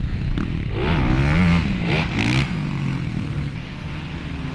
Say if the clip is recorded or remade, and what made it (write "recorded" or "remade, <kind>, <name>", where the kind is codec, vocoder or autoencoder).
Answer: recorded